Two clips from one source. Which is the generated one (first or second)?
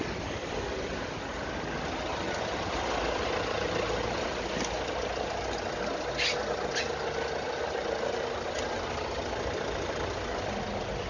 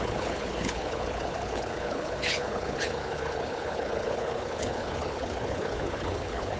second